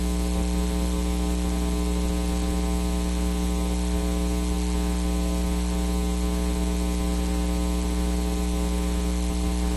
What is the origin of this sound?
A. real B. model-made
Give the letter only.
A